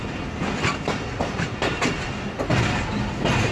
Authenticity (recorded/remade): recorded